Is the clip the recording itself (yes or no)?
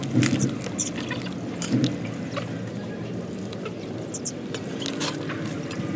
yes